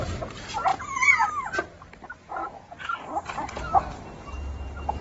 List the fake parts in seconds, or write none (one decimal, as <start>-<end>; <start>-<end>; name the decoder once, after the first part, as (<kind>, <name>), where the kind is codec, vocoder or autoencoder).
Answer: 0.7-1.3 (vocoder, Vocos); 2.4-3.1